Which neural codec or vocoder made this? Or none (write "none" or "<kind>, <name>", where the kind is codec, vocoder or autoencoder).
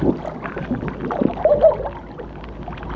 none